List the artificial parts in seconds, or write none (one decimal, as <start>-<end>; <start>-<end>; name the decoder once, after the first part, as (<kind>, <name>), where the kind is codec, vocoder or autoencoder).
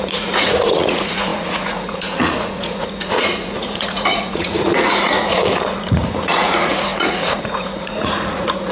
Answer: 0.0-8.7 (vocoder, Vocos)